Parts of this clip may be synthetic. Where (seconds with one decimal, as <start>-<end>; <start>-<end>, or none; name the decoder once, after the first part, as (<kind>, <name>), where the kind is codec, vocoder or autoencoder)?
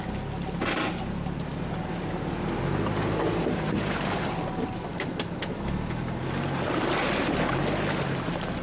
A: none